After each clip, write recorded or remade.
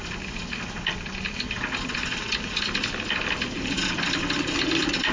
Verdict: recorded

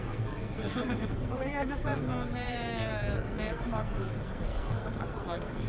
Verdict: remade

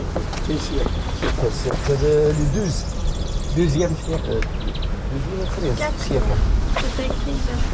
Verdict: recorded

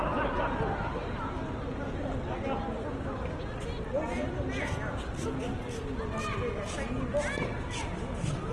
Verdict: recorded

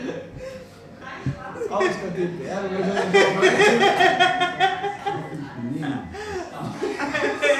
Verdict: recorded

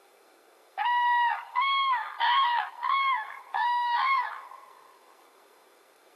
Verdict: remade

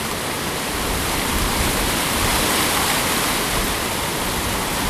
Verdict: recorded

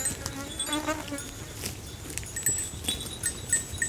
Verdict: recorded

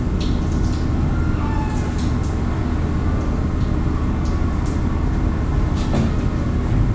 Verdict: recorded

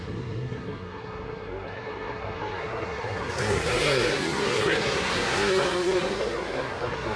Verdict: remade